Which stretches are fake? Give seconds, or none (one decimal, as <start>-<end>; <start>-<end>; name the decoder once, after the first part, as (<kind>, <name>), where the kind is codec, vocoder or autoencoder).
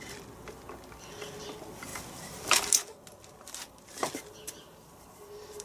none